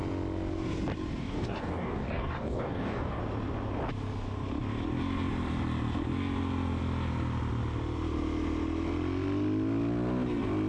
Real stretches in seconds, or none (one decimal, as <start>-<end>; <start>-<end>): 0.0-1.2; 3.2-10.7